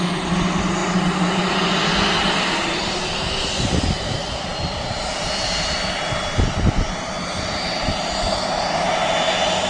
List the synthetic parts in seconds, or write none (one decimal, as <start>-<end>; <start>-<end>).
none